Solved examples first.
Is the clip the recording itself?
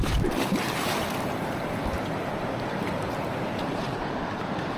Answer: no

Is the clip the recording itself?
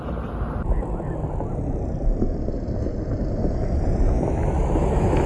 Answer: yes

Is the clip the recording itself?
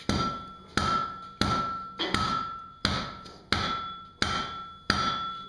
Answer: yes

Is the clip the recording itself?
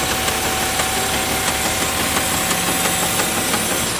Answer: yes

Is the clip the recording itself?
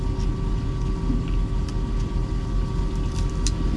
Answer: yes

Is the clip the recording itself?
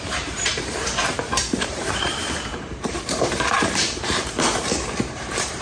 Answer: no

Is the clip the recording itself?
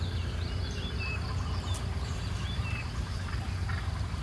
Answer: no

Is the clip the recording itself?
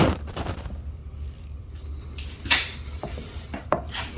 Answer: no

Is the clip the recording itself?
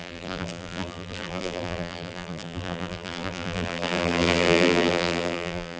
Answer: no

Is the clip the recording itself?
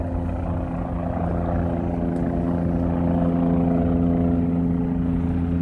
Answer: yes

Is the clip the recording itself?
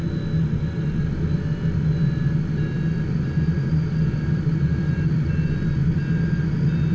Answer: yes